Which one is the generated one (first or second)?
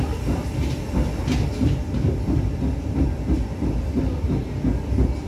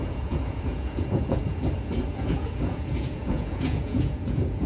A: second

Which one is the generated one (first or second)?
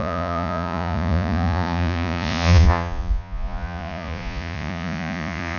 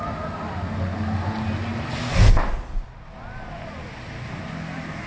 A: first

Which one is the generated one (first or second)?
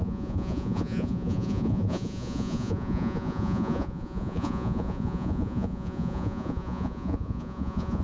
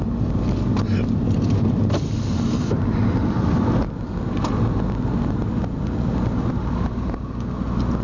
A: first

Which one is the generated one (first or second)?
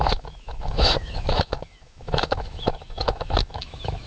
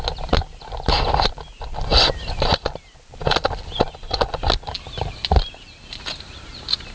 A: first